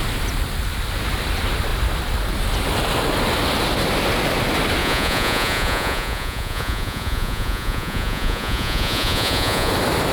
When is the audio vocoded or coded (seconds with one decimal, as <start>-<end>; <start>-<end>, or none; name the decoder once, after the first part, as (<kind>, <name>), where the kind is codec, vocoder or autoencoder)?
4.8-9.7 (vocoder, Vocos)